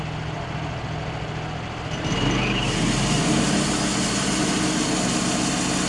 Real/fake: real